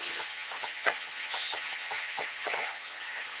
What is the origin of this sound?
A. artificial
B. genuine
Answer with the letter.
A